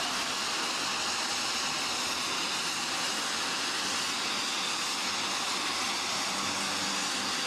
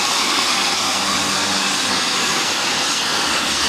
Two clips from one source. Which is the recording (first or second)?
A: first